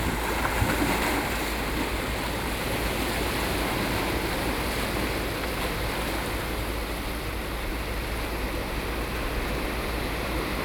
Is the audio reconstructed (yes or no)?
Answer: no